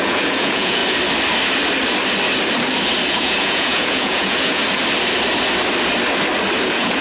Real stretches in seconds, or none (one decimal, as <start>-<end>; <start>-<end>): 0.8-3.1; 4.6-6.6